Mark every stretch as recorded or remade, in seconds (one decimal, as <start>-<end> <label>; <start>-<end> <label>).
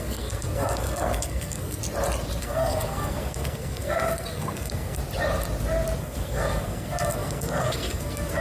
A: 0.0-1.8 remade; 1.8-2.4 recorded; 2.4-5.0 remade; 5.0-6.0 recorded; 6.0-8.4 remade